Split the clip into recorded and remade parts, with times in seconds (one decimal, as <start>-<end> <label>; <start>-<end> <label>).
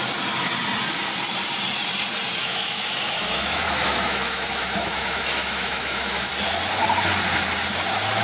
0.0-2.4 recorded; 2.4-6.3 remade; 6.3-8.2 recorded